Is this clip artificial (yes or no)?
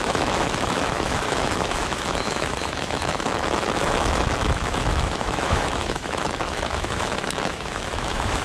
yes